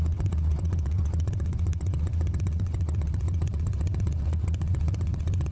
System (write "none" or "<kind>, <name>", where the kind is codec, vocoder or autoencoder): vocoder, WaveNeXt